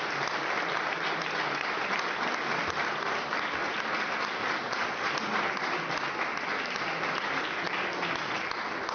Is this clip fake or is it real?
real